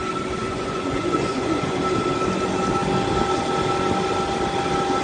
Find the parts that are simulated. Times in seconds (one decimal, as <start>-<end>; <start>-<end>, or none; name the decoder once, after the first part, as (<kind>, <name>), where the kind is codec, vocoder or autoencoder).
0.4-1.8 (vocoder, Vocos)